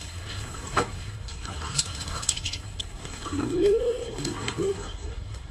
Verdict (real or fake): fake